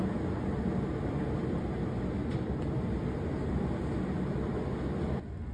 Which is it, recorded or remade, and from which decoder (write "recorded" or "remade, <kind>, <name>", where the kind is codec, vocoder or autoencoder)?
recorded